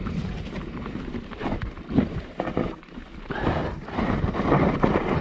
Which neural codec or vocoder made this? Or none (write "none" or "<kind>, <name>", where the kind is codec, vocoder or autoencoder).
vocoder, BigVGAN v2